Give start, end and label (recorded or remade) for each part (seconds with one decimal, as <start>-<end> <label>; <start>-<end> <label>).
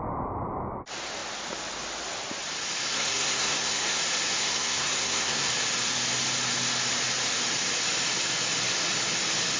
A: 0.0-2.9 recorded; 2.9-4.0 remade; 4.0-4.4 recorded; 4.4-5.5 remade; 5.5-9.6 recorded